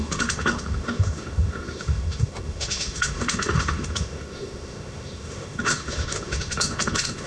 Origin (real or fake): fake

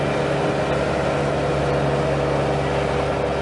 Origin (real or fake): real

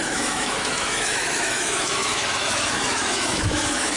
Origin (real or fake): fake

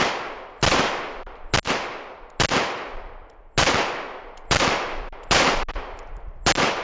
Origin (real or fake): real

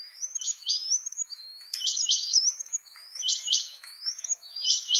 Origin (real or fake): fake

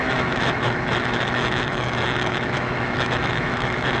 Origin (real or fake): fake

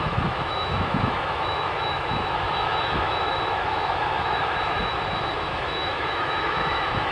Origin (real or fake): fake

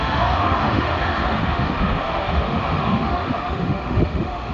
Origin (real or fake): fake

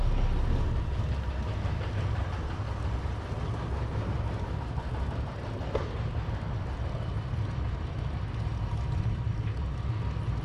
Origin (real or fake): real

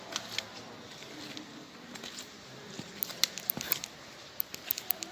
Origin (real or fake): real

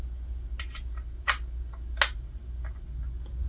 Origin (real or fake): real